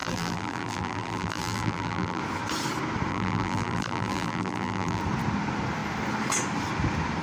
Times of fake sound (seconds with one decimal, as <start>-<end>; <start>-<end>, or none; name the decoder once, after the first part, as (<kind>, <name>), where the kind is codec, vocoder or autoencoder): 0.0-2.2 (vocoder, BigVGAN v2); 3.1-5.0